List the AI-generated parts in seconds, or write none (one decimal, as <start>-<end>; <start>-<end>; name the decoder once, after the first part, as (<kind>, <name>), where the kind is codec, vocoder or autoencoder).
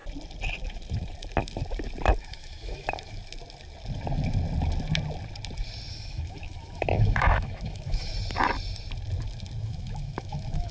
2.2-3.2 (autoencoder, DAC-VAE); 5.9-8.1; 9.6-10.7